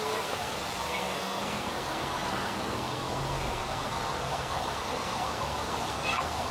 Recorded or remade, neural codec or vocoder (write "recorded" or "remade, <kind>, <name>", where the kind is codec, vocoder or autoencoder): remade, codec, SNAC